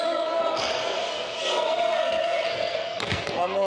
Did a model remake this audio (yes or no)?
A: yes